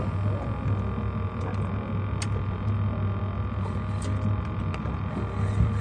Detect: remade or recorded recorded